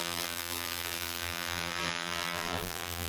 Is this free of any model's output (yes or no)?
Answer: no